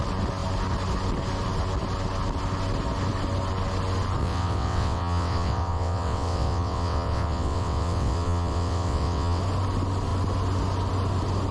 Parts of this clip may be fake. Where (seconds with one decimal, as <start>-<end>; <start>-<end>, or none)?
4.2-9.4